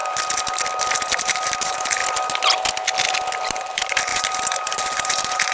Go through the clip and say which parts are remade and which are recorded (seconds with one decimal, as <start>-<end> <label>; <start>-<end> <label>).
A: 0.0-0.9 recorded; 0.9-2.0 remade; 2.0-3.5 recorded; 3.5-5.5 remade